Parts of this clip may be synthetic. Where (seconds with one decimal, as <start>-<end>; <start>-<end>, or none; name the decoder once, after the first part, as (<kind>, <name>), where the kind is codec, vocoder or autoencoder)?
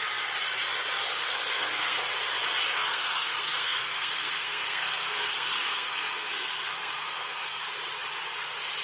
1.1-2.0 (codec, SNAC); 2.8-7.6